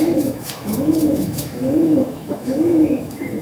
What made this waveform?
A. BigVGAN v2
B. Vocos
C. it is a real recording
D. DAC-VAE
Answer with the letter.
D